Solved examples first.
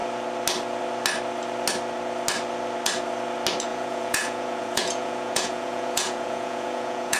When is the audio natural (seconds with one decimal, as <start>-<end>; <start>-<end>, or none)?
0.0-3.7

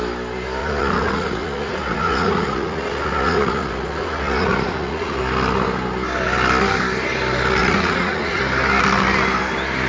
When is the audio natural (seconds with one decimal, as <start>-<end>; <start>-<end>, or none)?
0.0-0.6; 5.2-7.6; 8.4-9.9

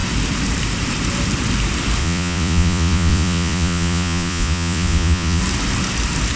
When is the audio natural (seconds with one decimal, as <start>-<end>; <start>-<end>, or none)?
0.0-2.0; 5.4-6.4

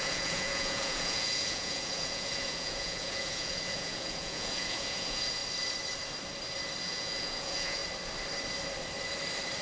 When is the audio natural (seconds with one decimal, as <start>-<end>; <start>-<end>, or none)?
5.4-6.8; 7.8-9.6

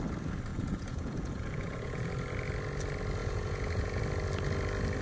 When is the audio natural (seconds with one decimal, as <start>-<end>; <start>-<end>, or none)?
0.0-0.5; 2.1-3.2; 4.0-5.0

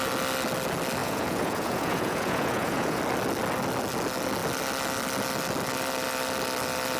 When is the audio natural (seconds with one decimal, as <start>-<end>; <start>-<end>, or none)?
0.0-1.0; 3.0-7.0

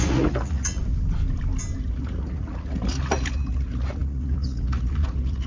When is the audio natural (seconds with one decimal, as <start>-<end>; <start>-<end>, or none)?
0.8-1.9

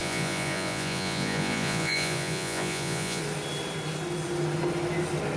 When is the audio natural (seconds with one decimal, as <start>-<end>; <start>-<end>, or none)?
3.2-5.4